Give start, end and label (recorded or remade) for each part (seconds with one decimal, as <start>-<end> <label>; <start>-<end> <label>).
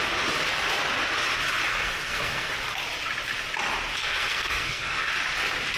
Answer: 0.0-1.7 recorded; 1.7-2.5 remade; 2.5-4.0 recorded; 4.0-5.1 remade; 5.1-5.8 recorded